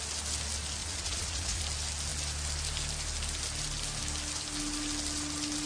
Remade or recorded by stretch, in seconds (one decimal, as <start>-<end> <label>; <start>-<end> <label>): 0.0-0.8 recorded; 0.8-1.6 remade; 1.6-5.7 recorded